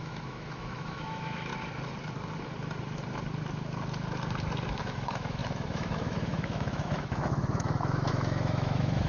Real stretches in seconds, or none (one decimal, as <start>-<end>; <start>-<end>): 1.5-4.8